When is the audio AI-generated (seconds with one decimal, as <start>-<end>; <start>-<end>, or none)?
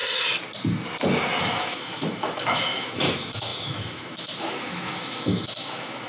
1.4-6.1